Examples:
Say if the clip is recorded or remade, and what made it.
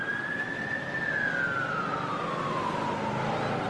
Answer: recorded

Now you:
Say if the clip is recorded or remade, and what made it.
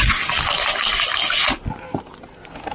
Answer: recorded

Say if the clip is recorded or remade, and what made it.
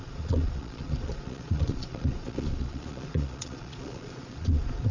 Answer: remade, vocoder, Vocos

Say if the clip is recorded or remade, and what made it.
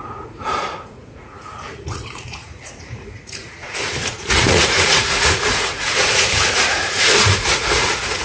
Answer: remade, vocoder, Vocos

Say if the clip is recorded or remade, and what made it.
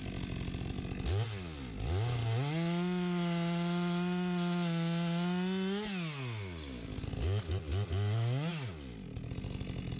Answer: recorded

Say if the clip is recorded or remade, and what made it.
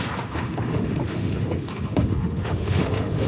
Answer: remade, autoencoder, DAC-VAE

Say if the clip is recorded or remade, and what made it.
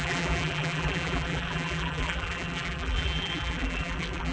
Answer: remade, vocoder, BigVGAN v2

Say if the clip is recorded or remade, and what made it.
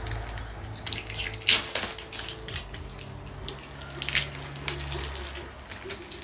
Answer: recorded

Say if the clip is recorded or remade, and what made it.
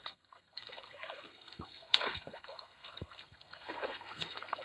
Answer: remade, codec, SNAC